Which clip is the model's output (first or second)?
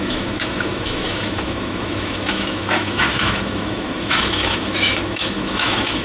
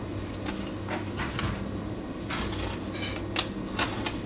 first